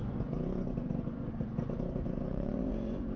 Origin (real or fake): fake